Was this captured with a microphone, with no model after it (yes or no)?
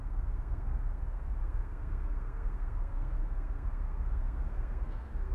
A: no